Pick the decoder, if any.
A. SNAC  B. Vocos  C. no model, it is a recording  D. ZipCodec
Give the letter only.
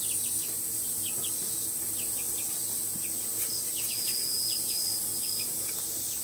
C